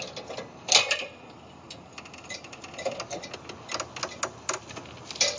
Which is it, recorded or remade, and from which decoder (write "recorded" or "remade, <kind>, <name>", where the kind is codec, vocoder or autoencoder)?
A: recorded